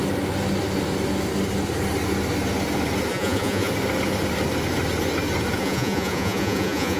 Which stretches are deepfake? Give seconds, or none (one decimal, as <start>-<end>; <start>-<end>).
3.1-3.7; 5.6-7.0